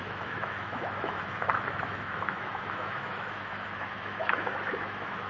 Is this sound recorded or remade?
remade